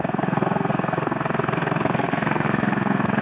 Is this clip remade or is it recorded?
remade